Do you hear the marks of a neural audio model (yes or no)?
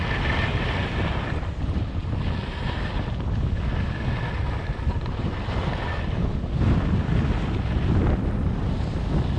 no